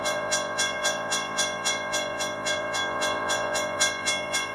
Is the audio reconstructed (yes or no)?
yes